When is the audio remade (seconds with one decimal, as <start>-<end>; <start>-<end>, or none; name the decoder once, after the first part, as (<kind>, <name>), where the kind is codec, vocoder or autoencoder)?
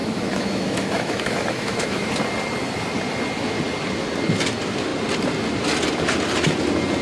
0.0-2.1 (autoencoder, DAC-VAE)